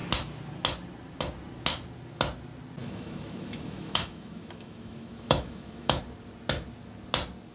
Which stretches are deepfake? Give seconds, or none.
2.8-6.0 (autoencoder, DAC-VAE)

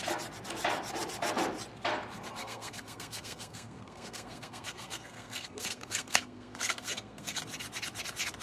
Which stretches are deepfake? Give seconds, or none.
2.4-7.4 (codec, SNAC)

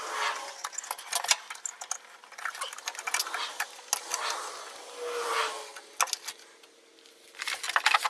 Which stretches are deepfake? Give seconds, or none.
none

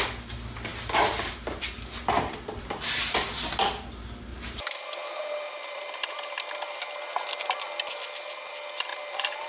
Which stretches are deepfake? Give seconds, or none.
4.3-6.4 (vocoder, BigVGAN v2); 8.9-9.5

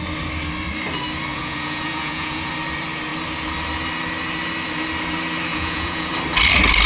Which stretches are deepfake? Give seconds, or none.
1.3-2.5 (vocoder, Vocos); 5.5-6.1